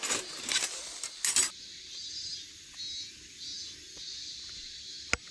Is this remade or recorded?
recorded